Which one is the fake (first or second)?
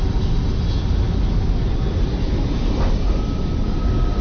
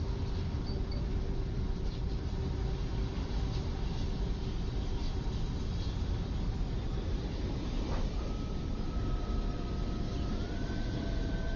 second